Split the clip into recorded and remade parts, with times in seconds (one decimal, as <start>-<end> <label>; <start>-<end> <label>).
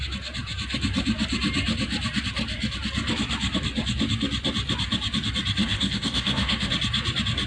0.0-5.6 recorded; 5.6-6.7 remade; 6.7-7.5 recorded